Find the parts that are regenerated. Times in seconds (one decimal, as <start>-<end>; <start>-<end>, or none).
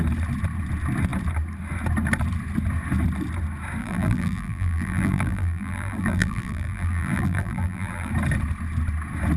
3.8-8.1